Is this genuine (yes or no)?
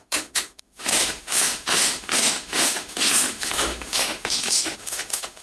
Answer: no